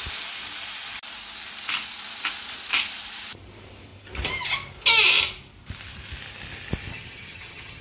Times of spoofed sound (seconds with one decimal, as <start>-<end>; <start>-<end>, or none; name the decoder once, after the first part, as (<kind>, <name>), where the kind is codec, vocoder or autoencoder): 6.9-7.8 (vocoder, HiFi-GAN)